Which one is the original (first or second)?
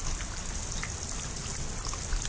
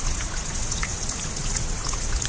first